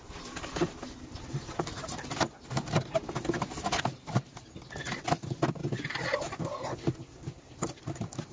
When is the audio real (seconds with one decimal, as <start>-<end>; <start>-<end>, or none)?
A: 0.0-8.3

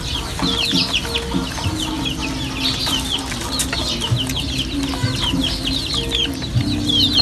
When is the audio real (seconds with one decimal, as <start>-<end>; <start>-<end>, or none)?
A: 0.0-7.2